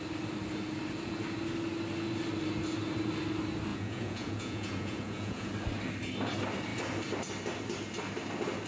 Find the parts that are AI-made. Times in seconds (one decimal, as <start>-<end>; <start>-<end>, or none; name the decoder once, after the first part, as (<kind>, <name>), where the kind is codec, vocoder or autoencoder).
3.7-5.5 (vocoder, Vocos)